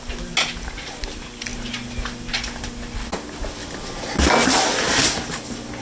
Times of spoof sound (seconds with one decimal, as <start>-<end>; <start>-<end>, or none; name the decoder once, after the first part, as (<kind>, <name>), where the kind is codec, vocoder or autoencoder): none